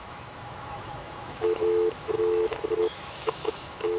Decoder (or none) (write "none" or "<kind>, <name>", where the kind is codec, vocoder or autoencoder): autoencoder, DAC-VAE